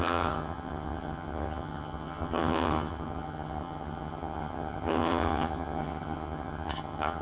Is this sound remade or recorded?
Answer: remade